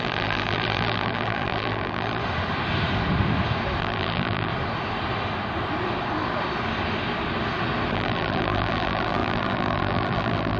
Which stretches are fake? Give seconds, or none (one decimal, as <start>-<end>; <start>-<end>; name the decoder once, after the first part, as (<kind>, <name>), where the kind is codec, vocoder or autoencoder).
0.0-2.2 (vocoder, BigVGAN v2); 3.8-4.5; 7.9-10.6